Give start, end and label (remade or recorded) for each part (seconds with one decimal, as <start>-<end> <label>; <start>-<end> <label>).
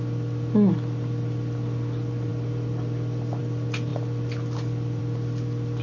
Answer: 0.0-5.8 recorded